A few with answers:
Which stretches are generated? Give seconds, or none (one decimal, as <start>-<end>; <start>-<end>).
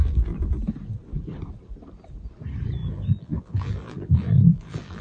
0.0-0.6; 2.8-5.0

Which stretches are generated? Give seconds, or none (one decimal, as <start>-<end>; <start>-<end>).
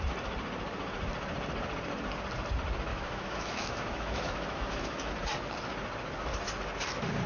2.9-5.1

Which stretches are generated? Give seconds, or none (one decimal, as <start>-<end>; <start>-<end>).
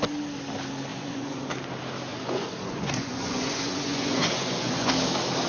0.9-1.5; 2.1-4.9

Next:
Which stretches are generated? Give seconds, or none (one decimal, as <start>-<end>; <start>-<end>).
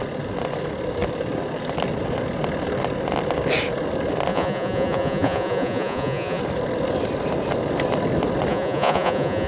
4.3-6.4; 8.5-9.5